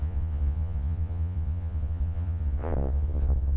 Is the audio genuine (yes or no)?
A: no